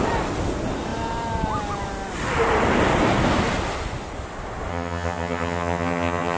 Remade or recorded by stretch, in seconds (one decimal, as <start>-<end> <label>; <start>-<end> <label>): 0.0-4.7 recorded; 4.7-6.4 remade